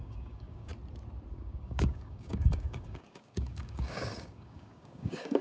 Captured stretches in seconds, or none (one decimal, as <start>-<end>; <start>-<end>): 0.7-1.3